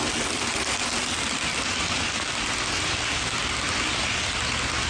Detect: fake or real real